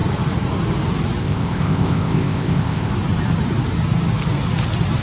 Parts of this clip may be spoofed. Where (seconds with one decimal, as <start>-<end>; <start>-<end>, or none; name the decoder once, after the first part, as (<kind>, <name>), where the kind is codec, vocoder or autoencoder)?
1.2-2.9 (codec, ZipCodec)